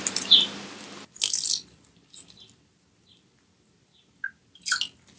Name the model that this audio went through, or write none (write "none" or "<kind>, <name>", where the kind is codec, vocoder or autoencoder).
none